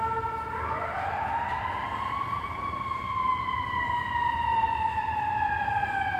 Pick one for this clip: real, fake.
fake